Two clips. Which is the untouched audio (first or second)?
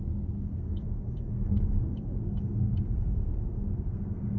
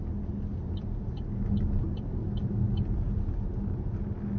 second